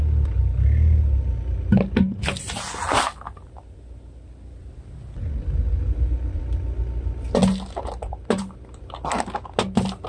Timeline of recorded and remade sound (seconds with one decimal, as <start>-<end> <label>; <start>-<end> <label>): 0.0-10.1 recorded